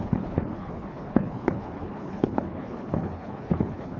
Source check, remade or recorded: remade